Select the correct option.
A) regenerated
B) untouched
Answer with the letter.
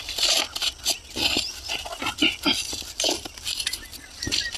B